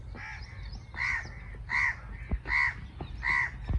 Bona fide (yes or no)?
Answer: yes